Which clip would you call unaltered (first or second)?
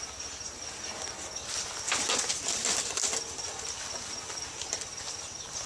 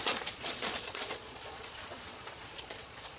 first